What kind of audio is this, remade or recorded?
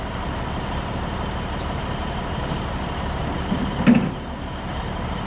remade